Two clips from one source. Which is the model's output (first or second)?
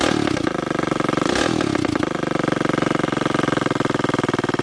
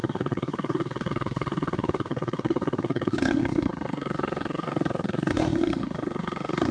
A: second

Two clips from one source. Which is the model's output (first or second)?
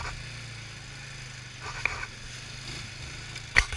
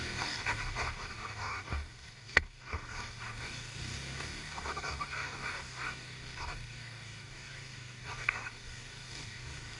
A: second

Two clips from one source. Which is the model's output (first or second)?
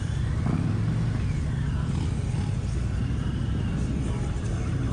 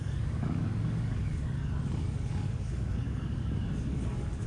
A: second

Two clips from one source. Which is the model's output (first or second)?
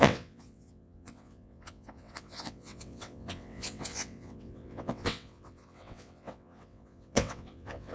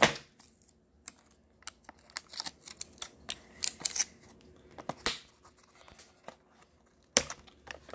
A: first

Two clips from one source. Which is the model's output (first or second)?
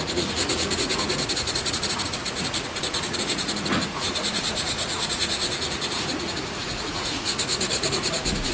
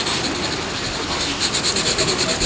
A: first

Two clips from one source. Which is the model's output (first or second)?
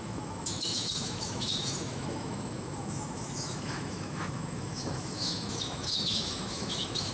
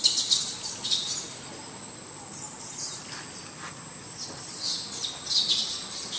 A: first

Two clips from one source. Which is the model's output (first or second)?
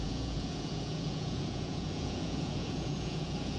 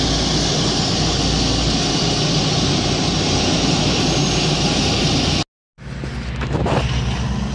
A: first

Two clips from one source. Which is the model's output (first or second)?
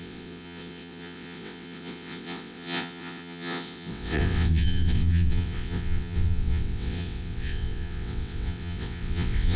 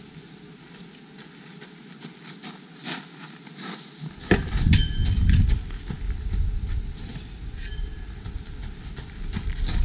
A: first